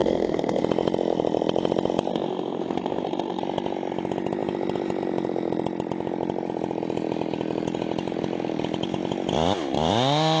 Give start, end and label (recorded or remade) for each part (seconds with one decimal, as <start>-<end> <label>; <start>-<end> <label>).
0.0-0.6 remade; 0.6-2.1 recorded; 2.1-3.4 remade; 3.4-10.4 recorded